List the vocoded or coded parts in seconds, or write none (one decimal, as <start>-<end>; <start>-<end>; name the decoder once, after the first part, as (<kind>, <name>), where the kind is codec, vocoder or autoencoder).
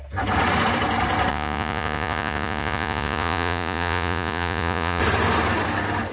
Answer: 1.3-5.0 (vocoder, Vocos)